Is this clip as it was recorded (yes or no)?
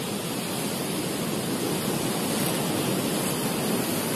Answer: yes